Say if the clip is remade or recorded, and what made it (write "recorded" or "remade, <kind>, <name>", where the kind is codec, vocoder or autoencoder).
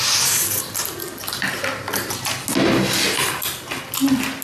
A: recorded